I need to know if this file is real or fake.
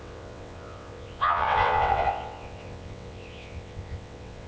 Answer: fake